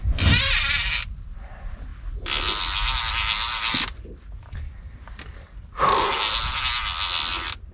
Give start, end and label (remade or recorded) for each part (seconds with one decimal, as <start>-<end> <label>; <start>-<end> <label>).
0.0-7.7 recorded

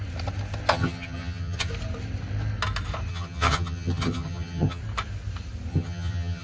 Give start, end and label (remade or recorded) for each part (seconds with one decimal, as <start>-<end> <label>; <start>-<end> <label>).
0.0-0.7 recorded; 0.7-1.7 remade; 1.7-3.1 recorded; 3.1-4.8 remade; 4.8-5.7 recorded; 5.7-6.4 remade

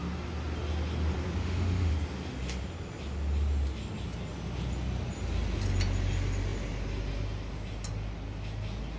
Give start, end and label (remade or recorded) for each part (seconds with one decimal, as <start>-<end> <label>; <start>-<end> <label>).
0.0-1.4 recorded; 1.4-1.9 remade; 1.9-9.0 recorded

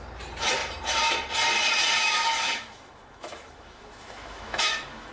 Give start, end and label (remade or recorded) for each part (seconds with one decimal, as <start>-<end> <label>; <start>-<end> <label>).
0.0-2.0 recorded; 2.0-5.1 remade

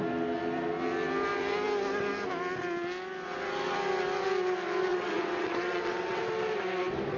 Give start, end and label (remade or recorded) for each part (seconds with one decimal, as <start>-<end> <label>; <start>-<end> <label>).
0.0-4.9 recorded; 4.9-6.2 remade; 6.2-7.2 recorded

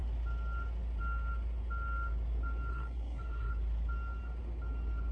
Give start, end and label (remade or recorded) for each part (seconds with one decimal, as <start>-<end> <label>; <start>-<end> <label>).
0.0-2.7 recorded; 2.7-3.5 remade; 3.5-5.1 recorded

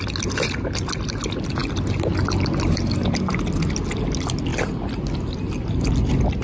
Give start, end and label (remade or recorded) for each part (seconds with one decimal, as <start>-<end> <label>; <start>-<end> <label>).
0.0-6.4 recorded